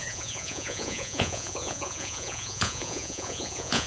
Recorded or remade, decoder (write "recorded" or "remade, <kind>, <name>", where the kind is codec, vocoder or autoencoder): remade, vocoder, Vocos